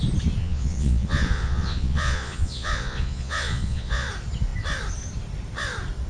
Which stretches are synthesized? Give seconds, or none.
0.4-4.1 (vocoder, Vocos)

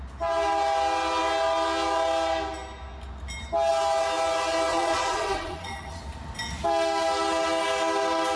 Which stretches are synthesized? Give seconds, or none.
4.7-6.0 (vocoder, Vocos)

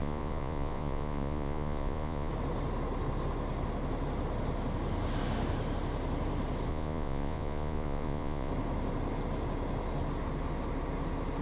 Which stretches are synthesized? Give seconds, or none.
0.0-2.3 (vocoder, Vocos); 6.7-8.5

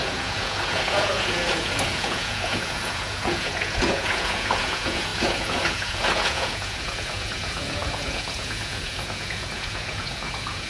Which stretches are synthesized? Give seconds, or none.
0.0-10.7 (vocoder, Vocos)

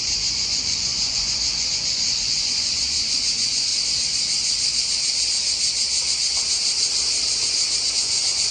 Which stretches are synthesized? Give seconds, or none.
0.0-3.7 (vocoder, Vocos); 7.9-8.5

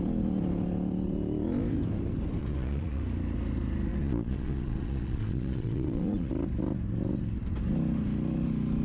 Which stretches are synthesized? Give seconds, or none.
2.4-3.0 (vocoder, Vocos); 3.9-6.3